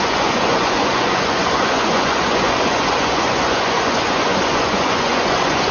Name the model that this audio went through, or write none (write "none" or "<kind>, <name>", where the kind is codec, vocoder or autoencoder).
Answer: vocoder, Vocos